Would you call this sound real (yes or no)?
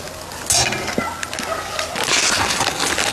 yes